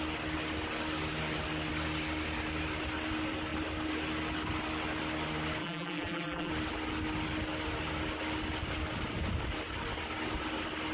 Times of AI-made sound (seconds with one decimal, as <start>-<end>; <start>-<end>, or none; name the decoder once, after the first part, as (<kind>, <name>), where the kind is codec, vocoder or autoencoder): 5.6-6.5 (vocoder, BigVGAN v2)